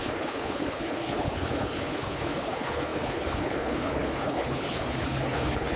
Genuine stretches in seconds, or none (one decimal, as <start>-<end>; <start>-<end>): none